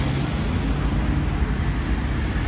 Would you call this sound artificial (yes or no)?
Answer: no